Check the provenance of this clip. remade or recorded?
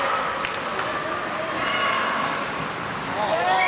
recorded